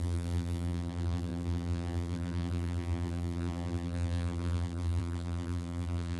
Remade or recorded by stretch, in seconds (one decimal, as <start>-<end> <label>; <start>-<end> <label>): 0.0-6.2 remade